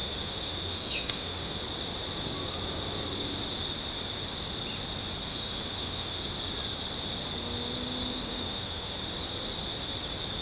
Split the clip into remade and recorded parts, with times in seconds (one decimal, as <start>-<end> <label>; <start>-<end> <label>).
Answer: 0.0-1.6 remade; 1.6-5.3 recorded; 5.3-6.2 remade; 6.2-8.1 recorded; 8.1-9.0 remade; 9.0-10.4 recorded